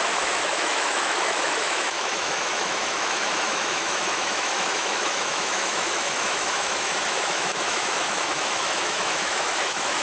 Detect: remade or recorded remade